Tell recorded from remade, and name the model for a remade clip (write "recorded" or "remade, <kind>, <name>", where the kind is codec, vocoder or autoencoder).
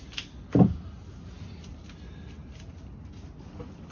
recorded